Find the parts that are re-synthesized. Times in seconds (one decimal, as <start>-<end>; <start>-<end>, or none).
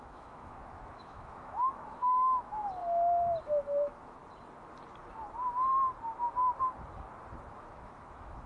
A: 0.0-2.8; 3.4-4.2; 7.6-8.5